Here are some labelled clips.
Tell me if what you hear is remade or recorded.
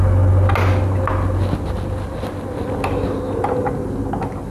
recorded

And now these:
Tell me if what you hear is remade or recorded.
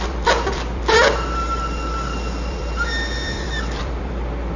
remade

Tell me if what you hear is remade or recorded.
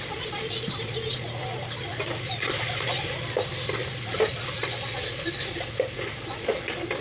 recorded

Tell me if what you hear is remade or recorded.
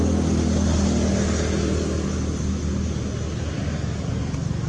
recorded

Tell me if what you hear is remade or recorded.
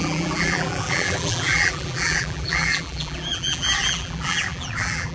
remade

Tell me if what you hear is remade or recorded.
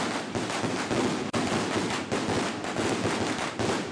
recorded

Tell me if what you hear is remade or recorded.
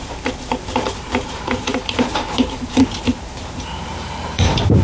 remade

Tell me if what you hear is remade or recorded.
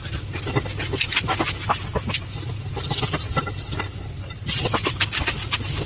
recorded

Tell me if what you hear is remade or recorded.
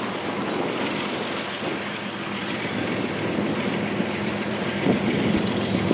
remade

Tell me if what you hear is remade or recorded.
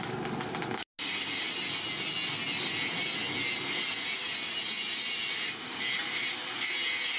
recorded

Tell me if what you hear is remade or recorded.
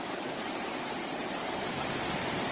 remade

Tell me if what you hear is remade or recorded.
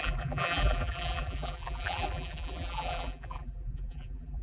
remade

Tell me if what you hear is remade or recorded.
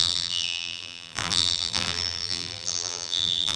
remade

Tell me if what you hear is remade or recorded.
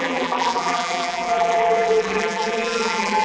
remade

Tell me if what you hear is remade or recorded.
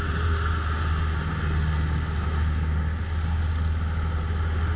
recorded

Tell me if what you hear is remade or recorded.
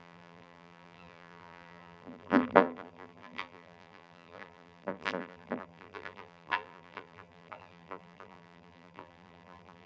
remade